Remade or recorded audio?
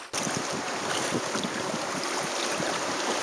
recorded